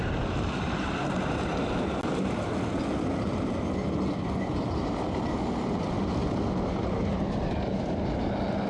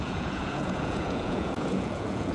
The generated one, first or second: second